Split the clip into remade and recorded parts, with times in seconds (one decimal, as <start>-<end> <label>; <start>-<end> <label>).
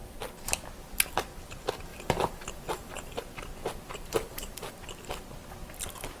0.0-1.9 recorded; 1.9-3.2 remade; 3.2-3.6 recorded; 3.6-4.7 remade; 4.7-6.2 recorded